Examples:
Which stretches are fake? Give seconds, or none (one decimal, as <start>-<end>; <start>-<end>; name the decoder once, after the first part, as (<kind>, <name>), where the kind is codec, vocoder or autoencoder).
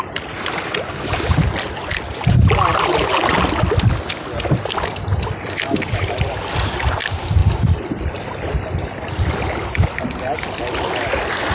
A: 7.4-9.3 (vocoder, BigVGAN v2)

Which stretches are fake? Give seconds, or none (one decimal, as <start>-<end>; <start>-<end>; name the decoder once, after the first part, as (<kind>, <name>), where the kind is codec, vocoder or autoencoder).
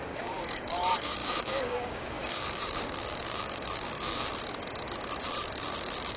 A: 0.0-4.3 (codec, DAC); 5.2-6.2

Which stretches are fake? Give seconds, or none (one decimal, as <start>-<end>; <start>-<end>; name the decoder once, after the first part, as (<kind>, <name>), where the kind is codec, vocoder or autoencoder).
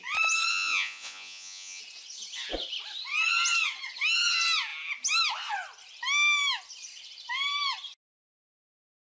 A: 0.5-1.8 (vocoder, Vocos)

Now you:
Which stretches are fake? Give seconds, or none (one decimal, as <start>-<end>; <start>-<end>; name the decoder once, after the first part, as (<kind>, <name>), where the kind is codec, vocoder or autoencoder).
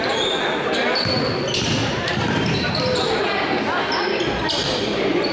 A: 1.8-2.7 (vocoder, BigVGAN v2)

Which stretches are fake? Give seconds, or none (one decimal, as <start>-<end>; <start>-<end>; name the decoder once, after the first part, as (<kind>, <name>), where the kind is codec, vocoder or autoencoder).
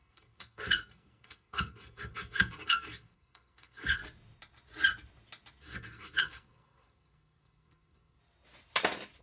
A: 0.0-4.0 (codec, SNAC); 5.6-8.2